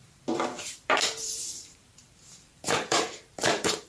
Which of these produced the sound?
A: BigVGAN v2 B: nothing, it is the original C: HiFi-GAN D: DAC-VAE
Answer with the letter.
A